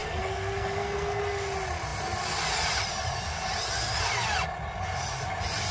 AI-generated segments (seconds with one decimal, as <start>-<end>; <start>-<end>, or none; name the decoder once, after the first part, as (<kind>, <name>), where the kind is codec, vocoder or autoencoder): 0.0-1.2 (codec, SNAC)